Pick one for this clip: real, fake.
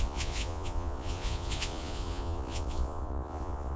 fake